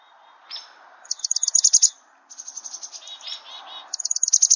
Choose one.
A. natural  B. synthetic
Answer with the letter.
A